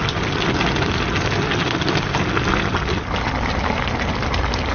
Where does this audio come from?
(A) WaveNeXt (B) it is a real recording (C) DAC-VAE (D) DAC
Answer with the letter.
B